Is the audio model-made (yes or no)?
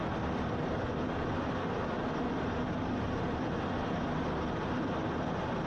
no